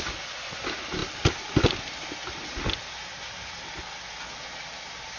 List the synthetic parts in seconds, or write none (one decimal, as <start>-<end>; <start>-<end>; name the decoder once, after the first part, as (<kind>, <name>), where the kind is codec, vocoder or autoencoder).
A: none